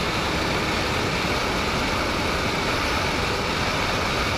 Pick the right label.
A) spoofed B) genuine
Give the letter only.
B